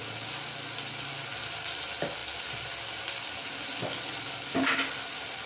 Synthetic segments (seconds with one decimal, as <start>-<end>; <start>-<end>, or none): none